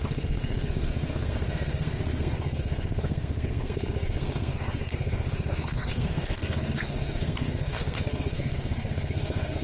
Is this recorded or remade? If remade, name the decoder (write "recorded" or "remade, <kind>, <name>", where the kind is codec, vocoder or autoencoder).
remade, codec, SNAC